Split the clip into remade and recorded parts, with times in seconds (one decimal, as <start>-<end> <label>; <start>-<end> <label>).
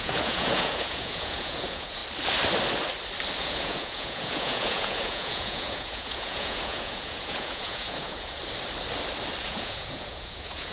0.0-2.0 remade; 2.0-3.4 recorded; 3.4-8.4 remade; 8.4-9.4 recorded; 9.4-10.7 remade